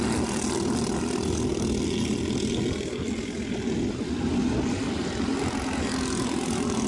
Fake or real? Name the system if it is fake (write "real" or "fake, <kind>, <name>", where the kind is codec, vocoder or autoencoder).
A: real